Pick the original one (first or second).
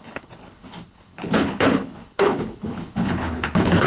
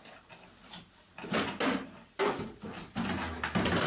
second